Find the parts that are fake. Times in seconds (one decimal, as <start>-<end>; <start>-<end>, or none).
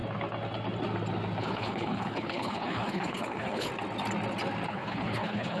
1.4-3.7; 4.7-5.6